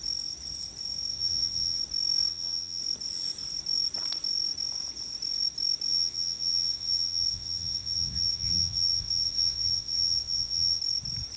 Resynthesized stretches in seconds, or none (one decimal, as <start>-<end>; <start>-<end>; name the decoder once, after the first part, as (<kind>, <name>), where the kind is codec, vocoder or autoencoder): 1.1-1.8 (vocoder, WaveNeXt); 2.3-2.8; 5.9-10.8

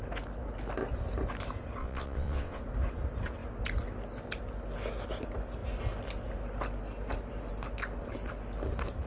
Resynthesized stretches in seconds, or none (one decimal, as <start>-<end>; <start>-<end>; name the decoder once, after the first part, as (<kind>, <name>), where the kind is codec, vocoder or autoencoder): 1.8-2.6 (vocoder, WaveNeXt)

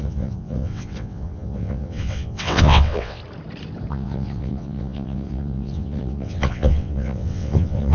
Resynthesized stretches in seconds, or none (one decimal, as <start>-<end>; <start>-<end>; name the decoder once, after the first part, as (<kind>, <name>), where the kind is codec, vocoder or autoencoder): 0.0-3.2 (vocoder, WaveNeXt); 3.9-7.9

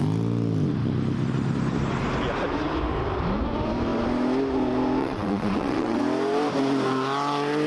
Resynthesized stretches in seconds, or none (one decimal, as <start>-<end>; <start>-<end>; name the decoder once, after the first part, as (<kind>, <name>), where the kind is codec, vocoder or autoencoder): 5.0-6.0 (vocoder, WaveNeXt)